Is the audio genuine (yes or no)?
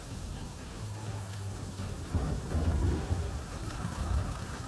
no